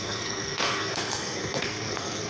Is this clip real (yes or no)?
no